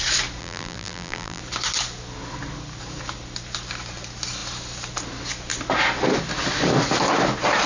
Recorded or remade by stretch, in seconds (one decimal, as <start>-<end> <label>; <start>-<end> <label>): 0.0-0.4 recorded; 0.4-1.4 remade; 1.4-7.7 recorded